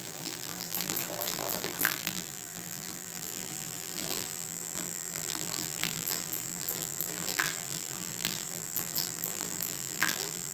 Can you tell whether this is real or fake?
fake